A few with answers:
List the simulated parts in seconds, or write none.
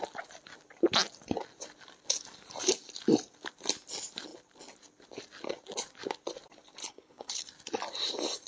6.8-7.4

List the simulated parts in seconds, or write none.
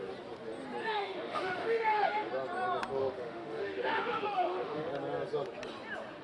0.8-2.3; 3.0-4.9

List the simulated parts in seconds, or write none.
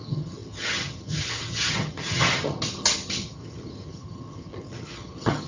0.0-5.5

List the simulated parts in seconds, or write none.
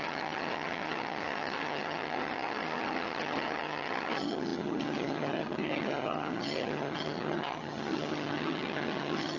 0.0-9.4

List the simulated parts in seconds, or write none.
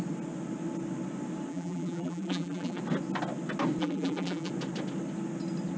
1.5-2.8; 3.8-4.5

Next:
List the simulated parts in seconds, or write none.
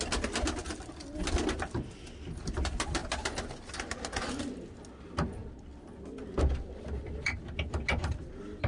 none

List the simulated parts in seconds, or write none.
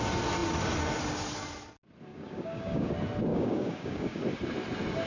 2.1-2.9; 3.3-4.2